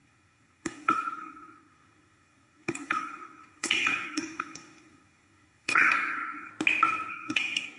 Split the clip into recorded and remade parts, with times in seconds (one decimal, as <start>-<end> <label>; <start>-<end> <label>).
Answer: 0.0-6.5 remade; 6.5-7.1 recorded; 7.1-7.8 remade